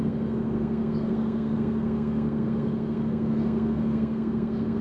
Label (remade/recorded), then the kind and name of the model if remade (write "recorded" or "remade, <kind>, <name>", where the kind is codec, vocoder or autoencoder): remade, codec, SNAC